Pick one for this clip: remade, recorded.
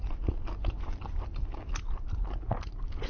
recorded